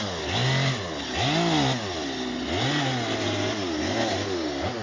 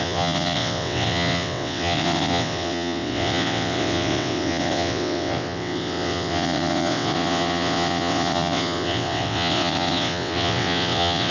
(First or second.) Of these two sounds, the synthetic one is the second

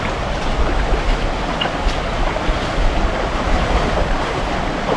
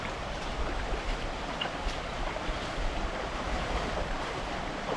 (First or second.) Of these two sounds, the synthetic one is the second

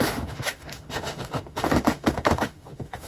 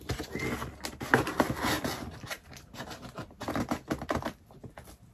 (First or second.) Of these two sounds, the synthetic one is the first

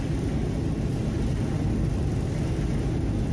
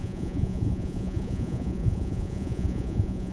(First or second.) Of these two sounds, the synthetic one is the second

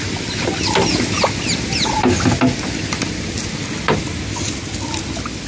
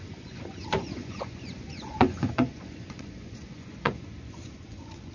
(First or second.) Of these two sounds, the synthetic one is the second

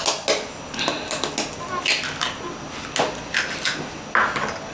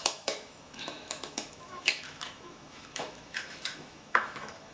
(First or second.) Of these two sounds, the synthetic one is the second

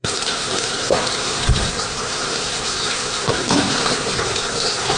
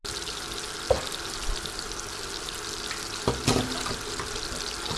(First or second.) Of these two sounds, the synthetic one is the first